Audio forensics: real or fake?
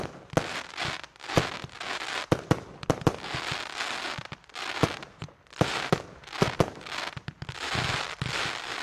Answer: real